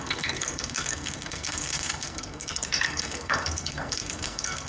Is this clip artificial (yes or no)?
yes